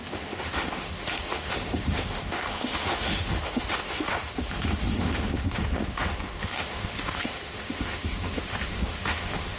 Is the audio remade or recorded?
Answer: remade